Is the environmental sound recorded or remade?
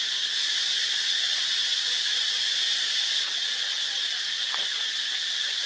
recorded